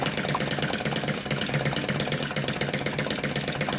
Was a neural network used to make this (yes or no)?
no